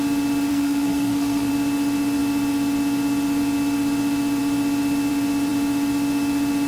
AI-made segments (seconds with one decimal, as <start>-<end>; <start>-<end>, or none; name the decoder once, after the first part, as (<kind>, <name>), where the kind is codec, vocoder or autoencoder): 0.5-1.5 (codec, SNAC)